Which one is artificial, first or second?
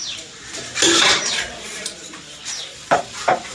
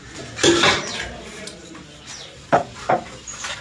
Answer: first